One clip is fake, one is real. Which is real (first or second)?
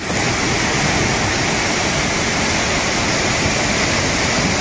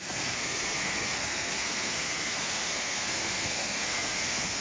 first